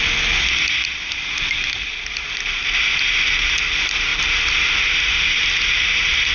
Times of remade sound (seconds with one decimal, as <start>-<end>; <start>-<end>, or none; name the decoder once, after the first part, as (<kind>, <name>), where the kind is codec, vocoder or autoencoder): none